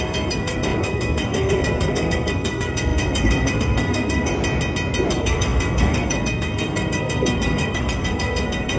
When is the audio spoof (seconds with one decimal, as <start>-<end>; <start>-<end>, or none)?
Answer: 0.0-4.3; 5.1-8.8